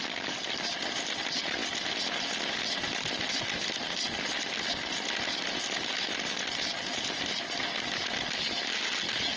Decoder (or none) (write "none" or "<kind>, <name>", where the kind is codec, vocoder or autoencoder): none